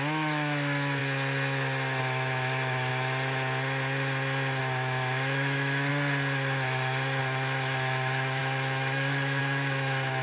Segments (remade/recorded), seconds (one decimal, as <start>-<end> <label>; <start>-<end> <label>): 0.0-1.0 remade; 1.0-2.0 recorded; 2.0-2.9 remade; 2.9-4.6 recorded; 4.6-5.9 remade; 5.9-7.2 recorded; 7.2-10.2 remade